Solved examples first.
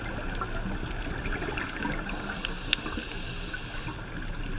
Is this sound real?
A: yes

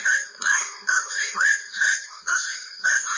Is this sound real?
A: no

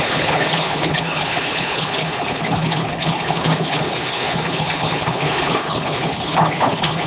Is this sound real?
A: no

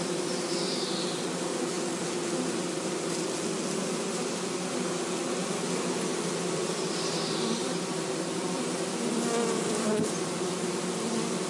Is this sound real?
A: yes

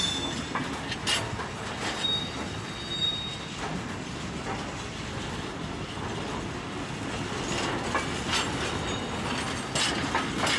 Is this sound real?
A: yes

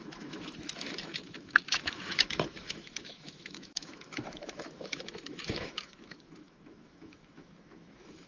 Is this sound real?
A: no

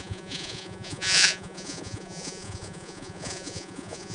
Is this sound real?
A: no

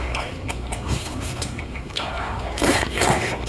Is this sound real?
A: no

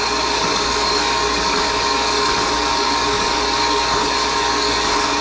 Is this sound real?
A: no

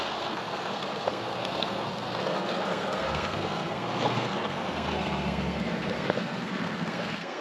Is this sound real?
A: no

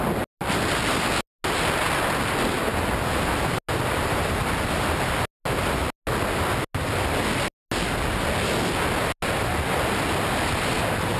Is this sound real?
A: yes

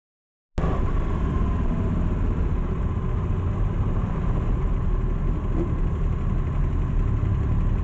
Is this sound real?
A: yes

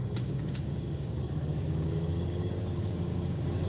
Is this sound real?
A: no